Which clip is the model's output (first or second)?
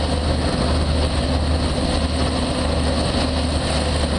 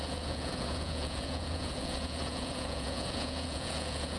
second